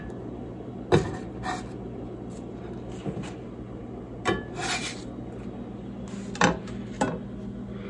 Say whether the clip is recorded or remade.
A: recorded